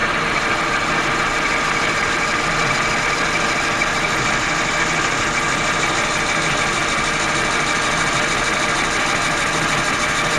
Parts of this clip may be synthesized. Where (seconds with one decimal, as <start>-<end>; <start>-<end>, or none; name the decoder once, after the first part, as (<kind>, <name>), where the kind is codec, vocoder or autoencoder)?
none

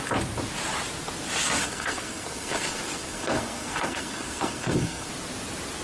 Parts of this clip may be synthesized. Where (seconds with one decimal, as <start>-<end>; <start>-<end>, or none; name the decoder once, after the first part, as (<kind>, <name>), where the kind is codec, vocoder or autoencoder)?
1.6-5.1 (codec, SNAC)

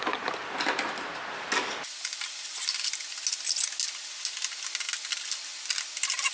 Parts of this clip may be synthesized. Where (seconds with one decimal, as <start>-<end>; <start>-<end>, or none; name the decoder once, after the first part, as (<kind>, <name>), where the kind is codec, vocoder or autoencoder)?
none

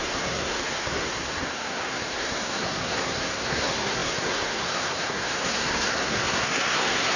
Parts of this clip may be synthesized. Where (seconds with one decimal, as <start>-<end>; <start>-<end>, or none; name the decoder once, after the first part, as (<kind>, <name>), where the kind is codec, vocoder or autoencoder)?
0.0-7.2 (codec, SNAC)

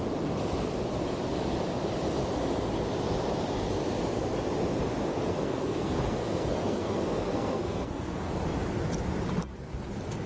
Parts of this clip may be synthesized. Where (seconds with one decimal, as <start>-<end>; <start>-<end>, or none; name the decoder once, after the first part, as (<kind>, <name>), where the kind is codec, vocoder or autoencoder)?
5.1-8.3 (codec, SNAC)